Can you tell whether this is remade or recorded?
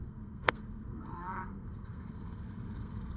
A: remade